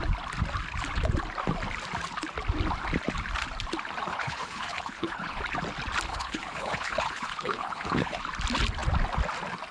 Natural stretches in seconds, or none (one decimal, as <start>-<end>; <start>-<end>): 0.0-4.1; 5.4-6.1; 8.2-9.7